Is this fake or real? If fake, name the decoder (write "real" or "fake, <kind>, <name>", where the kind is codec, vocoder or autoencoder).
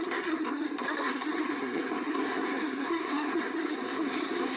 fake, codec, SNAC